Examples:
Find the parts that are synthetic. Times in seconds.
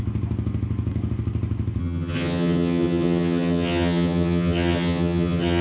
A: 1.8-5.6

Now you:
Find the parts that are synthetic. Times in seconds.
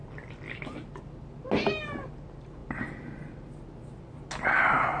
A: none